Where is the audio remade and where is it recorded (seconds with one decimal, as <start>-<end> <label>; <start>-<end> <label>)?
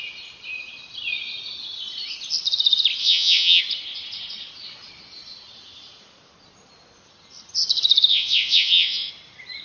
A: 0.0-3.0 recorded; 3.0-3.6 remade; 3.6-8.1 recorded; 8.1-9.1 remade; 9.1-9.6 recorded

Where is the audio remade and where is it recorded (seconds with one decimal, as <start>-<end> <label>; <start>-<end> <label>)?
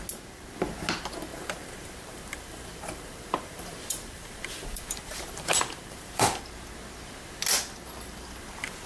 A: 0.0-1.3 recorded; 1.3-6.4 remade; 6.4-8.9 recorded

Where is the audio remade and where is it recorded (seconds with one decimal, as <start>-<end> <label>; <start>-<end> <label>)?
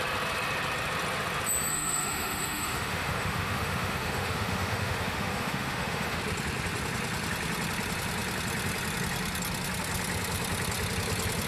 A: 0.0-1.7 recorded; 1.7-6.2 remade; 6.2-11.5 recorded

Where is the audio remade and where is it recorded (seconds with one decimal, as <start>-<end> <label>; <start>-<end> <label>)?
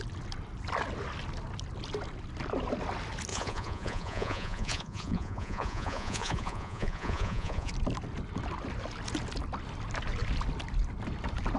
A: 0.0-3.3 recorded; 3.3-7.7 remade; 7.7-11.6 recorded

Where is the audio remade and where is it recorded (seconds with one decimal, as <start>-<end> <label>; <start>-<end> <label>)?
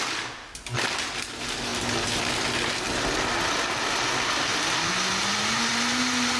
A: 0.0-6.4 recorded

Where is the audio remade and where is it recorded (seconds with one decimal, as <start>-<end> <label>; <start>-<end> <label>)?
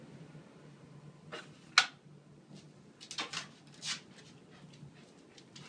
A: 0.0-5.7 recorded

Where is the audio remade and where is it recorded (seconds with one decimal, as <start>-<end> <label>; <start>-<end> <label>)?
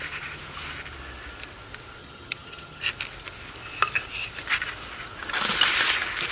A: 0.0-2.0 recorded; 2.0-2.8 remade; 2.8-6.3 recorded